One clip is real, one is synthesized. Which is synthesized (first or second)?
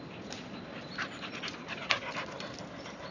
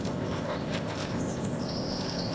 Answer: second